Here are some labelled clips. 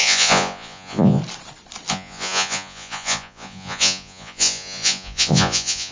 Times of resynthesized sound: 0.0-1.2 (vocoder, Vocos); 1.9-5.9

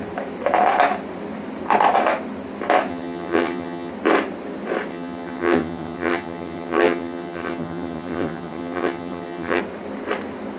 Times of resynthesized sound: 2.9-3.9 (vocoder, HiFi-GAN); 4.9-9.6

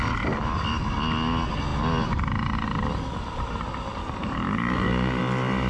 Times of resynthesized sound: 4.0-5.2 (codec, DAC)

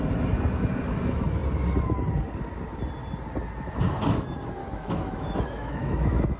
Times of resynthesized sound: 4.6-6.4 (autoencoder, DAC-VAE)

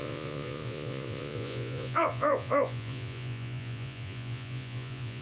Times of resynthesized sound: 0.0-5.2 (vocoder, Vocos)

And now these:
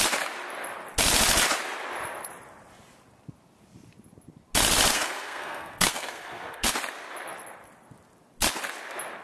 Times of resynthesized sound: 4.9-6.7 (codec, SNAC)